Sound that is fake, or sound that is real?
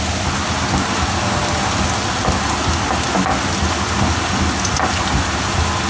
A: real